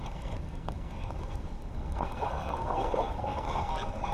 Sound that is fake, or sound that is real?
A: fake